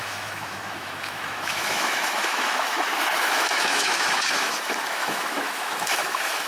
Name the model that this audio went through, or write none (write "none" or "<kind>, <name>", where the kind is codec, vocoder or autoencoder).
autoencoder, DAC-VAE